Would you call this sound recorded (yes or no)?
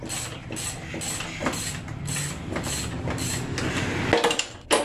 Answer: yes